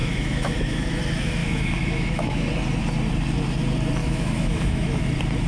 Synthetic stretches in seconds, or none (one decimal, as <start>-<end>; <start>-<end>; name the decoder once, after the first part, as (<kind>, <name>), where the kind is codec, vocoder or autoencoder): 0.0-1.0 (autoencoder, DAC-VAE); 1.4-2.5; 4.0-5.0

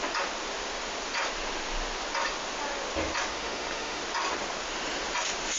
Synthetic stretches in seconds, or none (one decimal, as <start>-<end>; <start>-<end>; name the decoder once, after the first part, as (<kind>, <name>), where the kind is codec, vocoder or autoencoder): 3.3-4.0 (autoencoder, DAC-VAE)

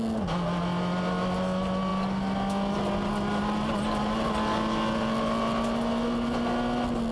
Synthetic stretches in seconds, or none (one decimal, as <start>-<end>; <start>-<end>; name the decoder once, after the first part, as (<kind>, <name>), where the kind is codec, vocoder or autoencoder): none

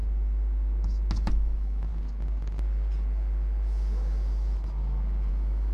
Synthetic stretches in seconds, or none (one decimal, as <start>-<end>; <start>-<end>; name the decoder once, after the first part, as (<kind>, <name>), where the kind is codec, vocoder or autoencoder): 1.3-1.9 (autoencoder, DAC-VAE); 5.3-5.7